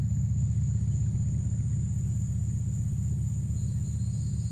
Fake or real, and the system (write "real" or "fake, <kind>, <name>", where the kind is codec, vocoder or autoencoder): real